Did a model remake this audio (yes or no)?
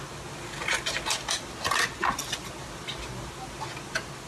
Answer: no